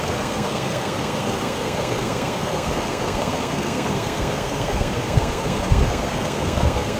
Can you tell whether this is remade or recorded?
remade